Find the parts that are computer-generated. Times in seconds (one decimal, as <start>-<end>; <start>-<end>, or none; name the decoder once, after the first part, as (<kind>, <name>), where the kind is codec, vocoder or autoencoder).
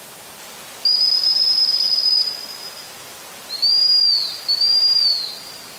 5.1-5.8 (vocoder, BigVGAN v2)